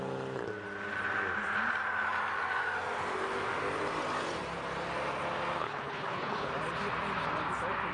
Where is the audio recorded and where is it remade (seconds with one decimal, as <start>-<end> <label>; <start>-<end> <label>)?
0.0-5.6 recorded; 5.6-6.5 remade; 6.5-7.9 recorded